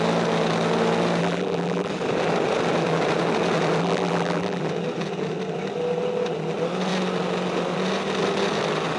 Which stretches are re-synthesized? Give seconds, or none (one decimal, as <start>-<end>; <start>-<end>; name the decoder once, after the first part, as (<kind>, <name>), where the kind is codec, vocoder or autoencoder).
1.2-1.9 (vocoder, BigVGAN v2); 3.8-4.6